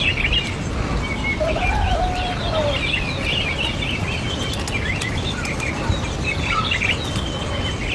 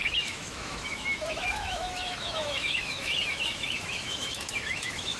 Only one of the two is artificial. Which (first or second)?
second